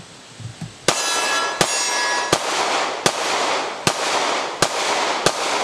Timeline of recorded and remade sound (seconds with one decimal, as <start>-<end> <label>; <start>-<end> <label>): 0.0-5.6 recorded